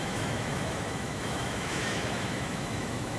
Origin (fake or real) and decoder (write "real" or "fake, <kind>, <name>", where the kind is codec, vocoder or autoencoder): fake, autoencoder, DAC-VAE